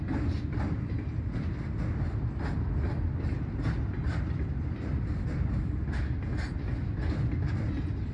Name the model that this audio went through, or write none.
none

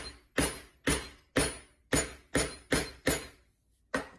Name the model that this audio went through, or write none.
none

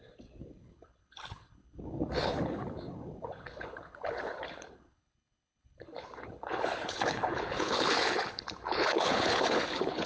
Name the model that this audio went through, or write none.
codec, HILCodec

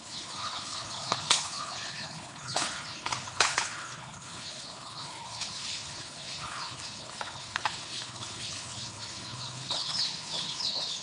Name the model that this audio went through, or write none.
codec, HILCodec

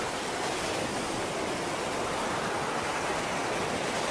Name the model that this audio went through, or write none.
none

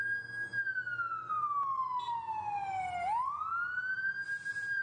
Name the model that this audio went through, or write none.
none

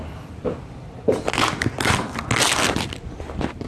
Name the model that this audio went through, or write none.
none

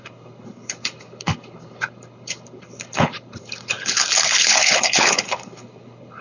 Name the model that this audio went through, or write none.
codec, HILCodec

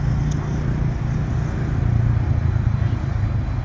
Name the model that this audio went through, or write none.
none